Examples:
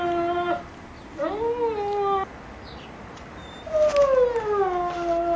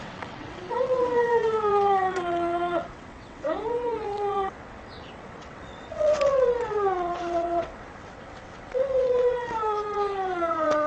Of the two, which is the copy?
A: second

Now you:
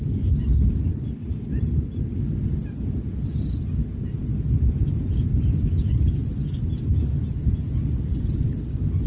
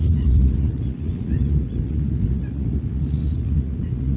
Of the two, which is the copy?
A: second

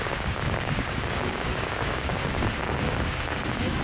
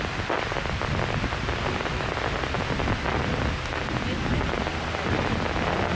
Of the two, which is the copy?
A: first